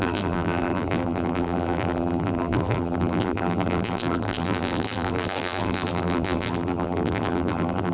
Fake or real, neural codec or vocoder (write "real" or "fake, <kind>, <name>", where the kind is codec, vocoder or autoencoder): fake, vocoder, BigVGAN v2